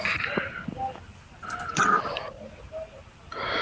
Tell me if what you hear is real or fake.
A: real